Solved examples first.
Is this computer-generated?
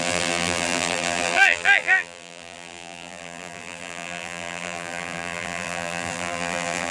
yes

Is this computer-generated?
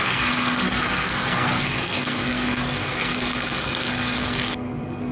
yes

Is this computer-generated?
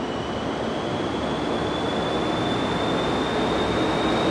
no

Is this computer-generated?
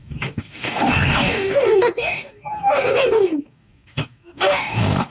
yes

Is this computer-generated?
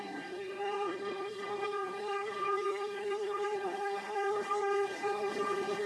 yes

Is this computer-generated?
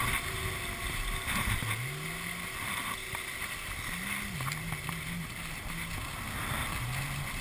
no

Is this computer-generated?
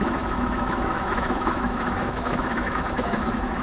yes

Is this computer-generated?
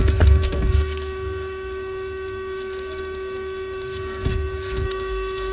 yes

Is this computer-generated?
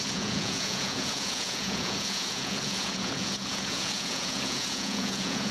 yes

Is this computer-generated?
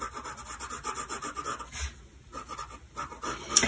no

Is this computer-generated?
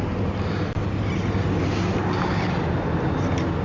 no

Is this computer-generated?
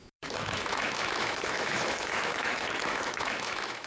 yes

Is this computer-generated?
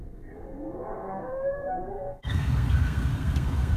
yes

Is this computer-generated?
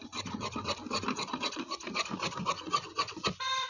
no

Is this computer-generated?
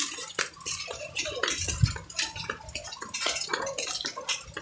no